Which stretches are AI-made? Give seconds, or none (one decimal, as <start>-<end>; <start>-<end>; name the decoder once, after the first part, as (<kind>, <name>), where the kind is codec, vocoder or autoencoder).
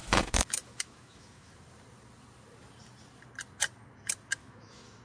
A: 0.0-1.5 (autoencoder, DAC-VAE); 4.4-5.0